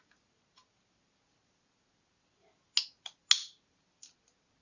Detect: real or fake real